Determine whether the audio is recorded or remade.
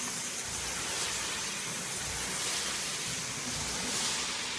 recorded